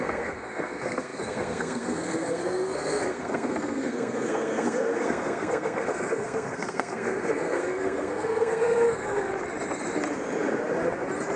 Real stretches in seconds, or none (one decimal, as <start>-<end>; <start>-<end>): 9.3-11.4